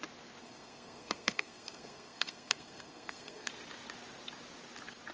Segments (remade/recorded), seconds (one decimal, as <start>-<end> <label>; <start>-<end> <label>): 0.0-0.4 recorded; 0.4-3.5 remade; 3.5-5.1 recorded